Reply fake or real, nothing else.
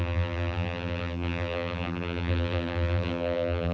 fake